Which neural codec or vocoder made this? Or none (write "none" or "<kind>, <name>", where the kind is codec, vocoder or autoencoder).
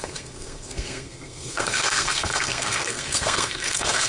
codec, SNAC